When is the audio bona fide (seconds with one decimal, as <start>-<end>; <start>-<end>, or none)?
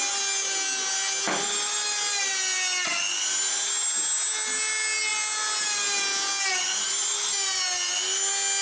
0.0-8.6